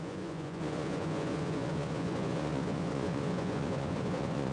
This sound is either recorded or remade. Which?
remade